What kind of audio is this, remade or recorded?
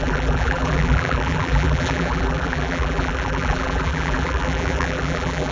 remade